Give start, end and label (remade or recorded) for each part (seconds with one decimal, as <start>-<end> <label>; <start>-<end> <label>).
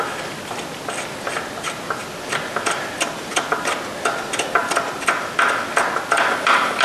0.0-6.8 recorded